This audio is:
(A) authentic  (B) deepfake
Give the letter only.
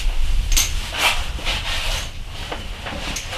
A